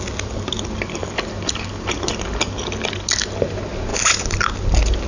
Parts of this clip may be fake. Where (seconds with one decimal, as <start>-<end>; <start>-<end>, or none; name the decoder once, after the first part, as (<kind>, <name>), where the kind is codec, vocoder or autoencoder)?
none